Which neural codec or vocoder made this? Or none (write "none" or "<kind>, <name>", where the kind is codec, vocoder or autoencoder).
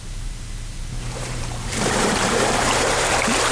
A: vocoder, BigVGAN v2